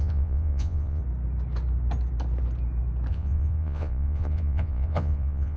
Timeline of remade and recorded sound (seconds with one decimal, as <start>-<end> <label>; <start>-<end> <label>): 0.0-1.0 remade; 1.0-3.1 recorded; 3.1-5.6 remade